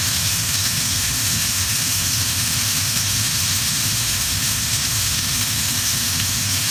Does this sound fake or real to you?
fake